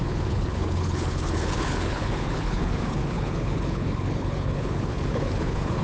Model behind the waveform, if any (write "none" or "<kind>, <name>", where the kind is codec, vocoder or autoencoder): codec, HILCodec